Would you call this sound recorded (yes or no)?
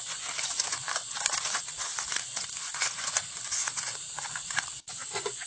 no